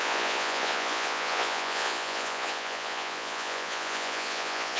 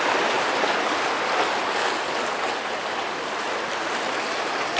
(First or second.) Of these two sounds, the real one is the second